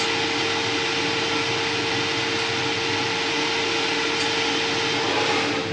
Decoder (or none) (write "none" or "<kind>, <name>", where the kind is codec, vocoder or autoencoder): none